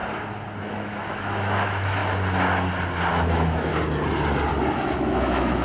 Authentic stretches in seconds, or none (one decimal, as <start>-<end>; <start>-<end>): 0.0-0.6; 2.0-3.1; 3.7-4.7